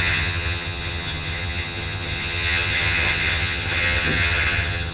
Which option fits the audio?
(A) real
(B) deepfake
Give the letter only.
B